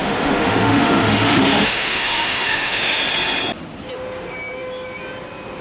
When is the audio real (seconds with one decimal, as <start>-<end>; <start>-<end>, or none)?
3.0-5.6